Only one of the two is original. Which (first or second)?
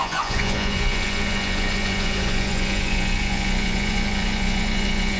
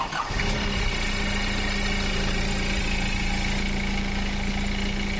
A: second